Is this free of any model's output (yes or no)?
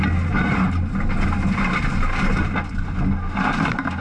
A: yes